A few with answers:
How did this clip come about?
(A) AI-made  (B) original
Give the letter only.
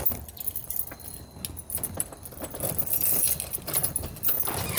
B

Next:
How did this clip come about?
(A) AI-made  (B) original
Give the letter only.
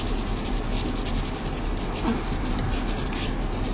B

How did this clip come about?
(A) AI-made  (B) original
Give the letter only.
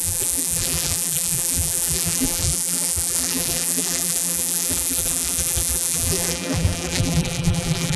A